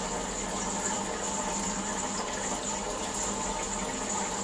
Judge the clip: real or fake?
real